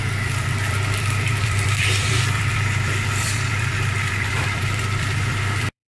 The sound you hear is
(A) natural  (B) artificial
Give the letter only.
B